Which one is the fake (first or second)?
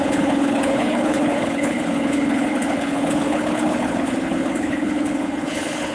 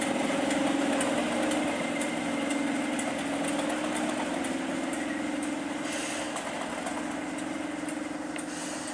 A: first